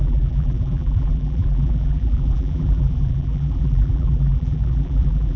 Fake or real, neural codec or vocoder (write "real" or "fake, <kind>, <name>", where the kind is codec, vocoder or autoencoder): fake, vocoder, BigVGAN v2